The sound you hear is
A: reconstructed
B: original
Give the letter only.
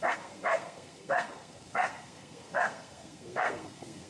A